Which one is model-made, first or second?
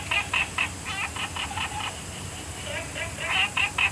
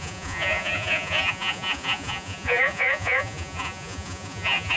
second